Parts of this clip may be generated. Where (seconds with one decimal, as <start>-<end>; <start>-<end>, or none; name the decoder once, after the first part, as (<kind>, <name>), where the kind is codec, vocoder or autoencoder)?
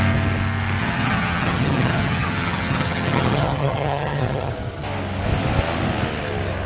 0.8-4.5 (vocoder, HiFi-GAN)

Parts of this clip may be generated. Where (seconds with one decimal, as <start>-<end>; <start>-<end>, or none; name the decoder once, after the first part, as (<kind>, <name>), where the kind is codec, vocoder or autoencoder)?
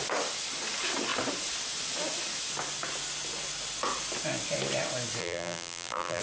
5.2-6.2 (vocoder, BigVGAN v2)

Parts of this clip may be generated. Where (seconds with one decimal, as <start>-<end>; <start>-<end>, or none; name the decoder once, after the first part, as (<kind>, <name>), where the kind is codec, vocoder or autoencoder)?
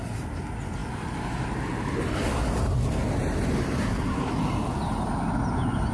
3.8-4.3 (codec, SNAC)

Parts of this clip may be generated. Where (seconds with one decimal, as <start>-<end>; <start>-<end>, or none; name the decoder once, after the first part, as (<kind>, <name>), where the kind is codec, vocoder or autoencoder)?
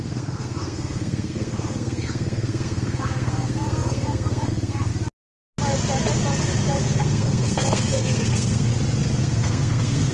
0.0-4.9 (codec, SNAC); 6.7-8.7; 9.2-10.1